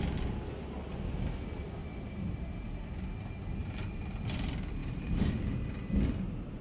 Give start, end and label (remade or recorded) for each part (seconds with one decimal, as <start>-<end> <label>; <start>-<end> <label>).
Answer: 0.0-1.8 recorded; 1.8-2.9 remade; 2.9-3.6 recorded; 3.6-4.2 remade; 4.2-4.8 recorded; 4.8-5.3 remade; 5.3-6.6 recorded